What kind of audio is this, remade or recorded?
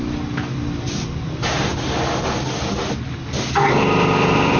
recorded